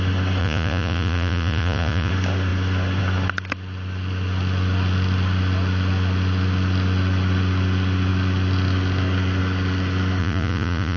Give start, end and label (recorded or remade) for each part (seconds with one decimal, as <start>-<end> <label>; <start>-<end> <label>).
0.0-0.4 recorded; 0.4-2.1 remade; 2.1-10.2 recorded; 10.2-11.0 remade